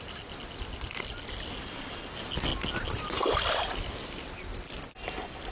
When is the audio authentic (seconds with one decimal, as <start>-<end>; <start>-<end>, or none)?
0.0-5.5

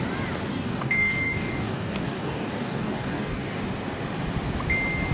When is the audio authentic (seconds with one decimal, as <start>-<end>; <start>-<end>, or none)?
0.0-0.5; 3.6-5.1